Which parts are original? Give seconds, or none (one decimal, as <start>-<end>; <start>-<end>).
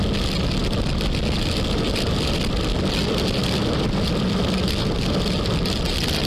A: 0.0-6.3